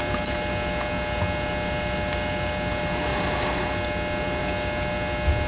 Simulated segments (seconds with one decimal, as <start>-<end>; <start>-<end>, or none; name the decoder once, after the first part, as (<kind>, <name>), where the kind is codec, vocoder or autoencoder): none